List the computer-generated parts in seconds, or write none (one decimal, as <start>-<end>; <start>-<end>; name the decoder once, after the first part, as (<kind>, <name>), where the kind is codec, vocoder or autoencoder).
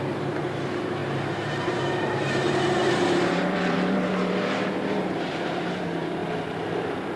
0.0-6.2 (vocoder, BigVGAN v2)